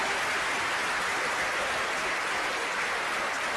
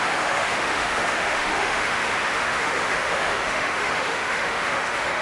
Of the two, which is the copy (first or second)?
second